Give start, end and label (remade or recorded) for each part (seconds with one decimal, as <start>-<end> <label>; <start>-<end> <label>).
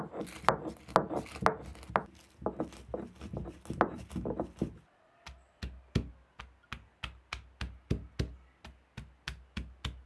0.0-10.1 recorded